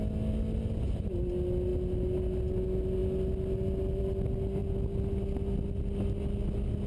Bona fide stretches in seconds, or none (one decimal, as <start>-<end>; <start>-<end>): 0.0-6.9